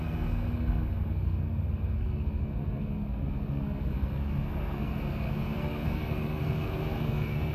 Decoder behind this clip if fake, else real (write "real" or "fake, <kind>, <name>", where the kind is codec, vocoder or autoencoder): fake, codec, SNAC